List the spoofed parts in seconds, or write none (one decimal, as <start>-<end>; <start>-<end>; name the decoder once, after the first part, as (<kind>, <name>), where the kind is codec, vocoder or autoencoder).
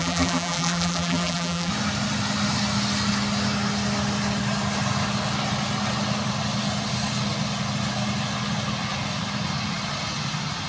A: 0.0-1.7 (vocoder, BigVGAN v2)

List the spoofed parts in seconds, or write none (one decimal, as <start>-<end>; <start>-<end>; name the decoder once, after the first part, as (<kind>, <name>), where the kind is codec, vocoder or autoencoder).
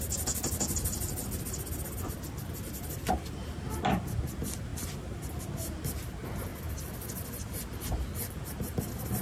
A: none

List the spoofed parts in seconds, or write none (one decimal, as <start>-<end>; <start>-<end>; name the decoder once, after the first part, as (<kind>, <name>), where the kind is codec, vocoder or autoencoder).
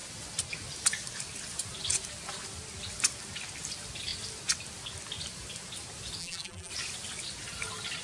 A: 6.2-6.7 (vocoder, BigVGAN v2)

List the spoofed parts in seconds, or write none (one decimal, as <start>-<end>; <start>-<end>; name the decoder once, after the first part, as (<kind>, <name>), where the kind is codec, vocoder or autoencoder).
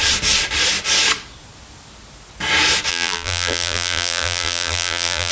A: 2.9-5.3 (vocoder, BigVGAN v2)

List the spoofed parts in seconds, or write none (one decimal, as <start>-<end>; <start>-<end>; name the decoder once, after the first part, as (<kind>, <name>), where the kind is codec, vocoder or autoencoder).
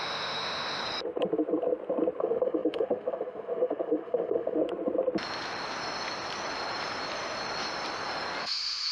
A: 0.0-0.8 (autoencoder, DAC-VAE); 2.2-4.6; 8.4-8.9